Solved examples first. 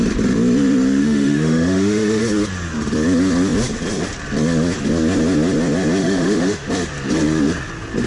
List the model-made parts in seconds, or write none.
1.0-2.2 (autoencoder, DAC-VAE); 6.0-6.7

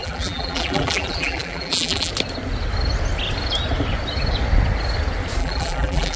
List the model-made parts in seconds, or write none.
0.0-2.1 (vocoder, BigVGAN v2); 5.4-6.2

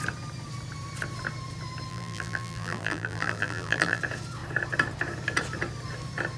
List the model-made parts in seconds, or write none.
1.9-4.0 (vocoder, BigVGAN v2)

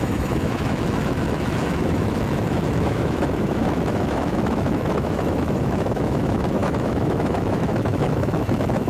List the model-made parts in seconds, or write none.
0.0-8.9 (autoencoder, DAC-VAE)

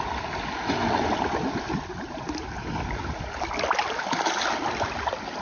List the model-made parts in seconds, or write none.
none